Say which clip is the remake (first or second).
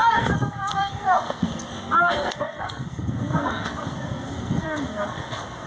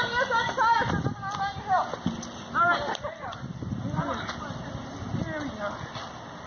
first